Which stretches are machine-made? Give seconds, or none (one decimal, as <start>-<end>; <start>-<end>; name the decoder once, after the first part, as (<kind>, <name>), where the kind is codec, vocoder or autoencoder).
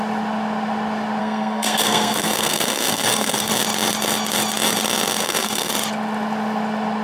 1.2-3.5 (codec, SNAC); 5.2-5.7